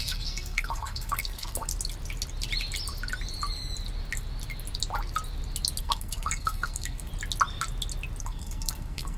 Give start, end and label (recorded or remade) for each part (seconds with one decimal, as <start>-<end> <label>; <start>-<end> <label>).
0.0-1.7 remade; 1.7-5.8 recorded; 5.8-7.1 remade; 7.1-8.2 recorded; 8.2-9.2 remade